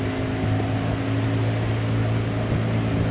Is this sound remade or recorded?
recorded